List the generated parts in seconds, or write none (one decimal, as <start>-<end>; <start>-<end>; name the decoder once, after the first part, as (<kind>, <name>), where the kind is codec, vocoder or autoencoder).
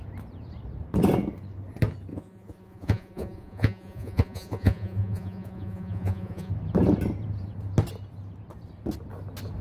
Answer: 2.1-6.5 (vocoder, Vocos)